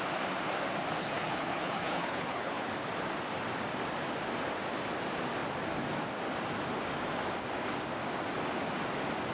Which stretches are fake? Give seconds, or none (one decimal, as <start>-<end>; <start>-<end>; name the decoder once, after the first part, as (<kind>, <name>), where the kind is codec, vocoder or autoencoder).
1.0-2.7 (codec, HILCodec)